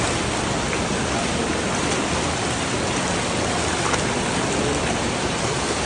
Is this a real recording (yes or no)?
yes